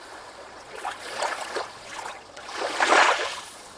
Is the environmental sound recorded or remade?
remade